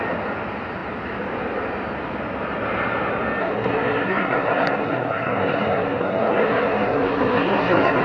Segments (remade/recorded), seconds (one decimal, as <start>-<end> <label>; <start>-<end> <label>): 0.0-3.4 recorded; 3.4-8.0 remade